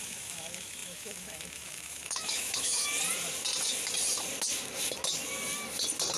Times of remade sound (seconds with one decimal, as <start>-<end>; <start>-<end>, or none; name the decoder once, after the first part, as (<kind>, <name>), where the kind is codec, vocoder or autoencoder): 0.0-2.9 (autoencoder, DAC-VAE)